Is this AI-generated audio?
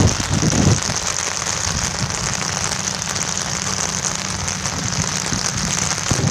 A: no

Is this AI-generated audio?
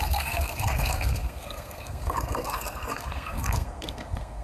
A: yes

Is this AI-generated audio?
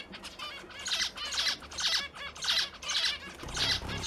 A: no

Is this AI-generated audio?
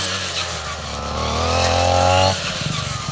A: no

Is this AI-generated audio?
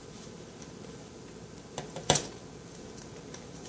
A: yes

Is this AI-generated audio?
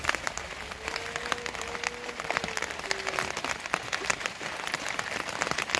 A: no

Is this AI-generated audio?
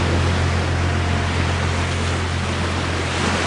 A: no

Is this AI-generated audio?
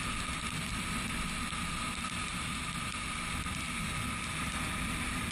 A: no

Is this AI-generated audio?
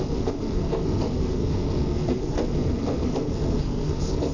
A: yes